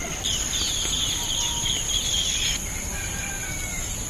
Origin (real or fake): real